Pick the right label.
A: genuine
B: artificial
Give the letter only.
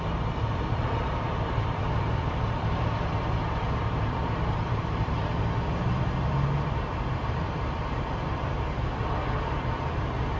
B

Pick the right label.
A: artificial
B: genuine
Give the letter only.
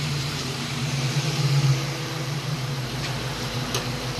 A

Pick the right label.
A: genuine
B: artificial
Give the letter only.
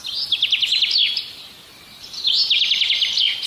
A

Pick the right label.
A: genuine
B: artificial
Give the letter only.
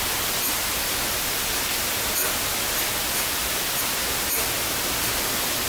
A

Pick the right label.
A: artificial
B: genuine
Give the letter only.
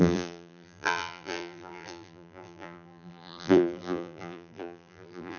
A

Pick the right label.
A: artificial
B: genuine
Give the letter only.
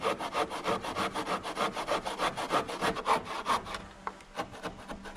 B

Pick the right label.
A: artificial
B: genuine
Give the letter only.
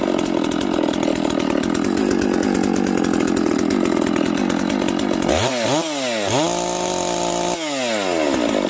B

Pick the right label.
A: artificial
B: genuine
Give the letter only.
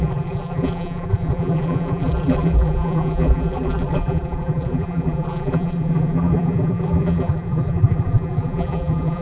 A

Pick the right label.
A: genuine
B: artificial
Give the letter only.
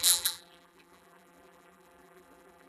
B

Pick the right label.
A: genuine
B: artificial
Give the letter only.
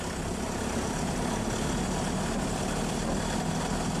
A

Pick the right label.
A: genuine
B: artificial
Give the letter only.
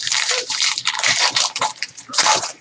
B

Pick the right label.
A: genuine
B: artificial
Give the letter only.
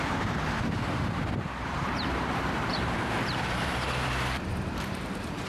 B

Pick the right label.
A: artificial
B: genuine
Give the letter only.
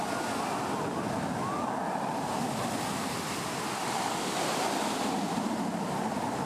B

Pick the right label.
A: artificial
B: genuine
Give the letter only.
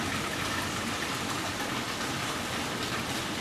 B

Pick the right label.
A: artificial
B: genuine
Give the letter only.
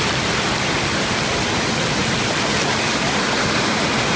A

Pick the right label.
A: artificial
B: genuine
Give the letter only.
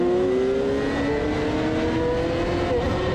B